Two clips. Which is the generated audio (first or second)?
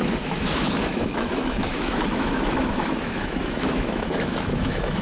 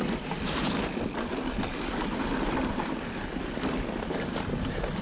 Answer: first